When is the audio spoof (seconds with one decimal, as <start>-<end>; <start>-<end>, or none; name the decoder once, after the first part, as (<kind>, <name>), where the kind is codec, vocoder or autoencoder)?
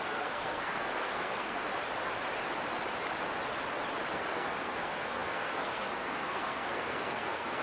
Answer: 0.0-1.7 (codec, SNAC); 4.1-7.6